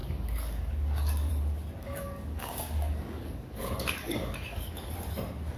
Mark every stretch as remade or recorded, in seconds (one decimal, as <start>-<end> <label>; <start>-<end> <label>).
0.0-1.3 remade; 1.3-1.8 recorded; 1.8-4.9 remade; 4.9-5.6 recorded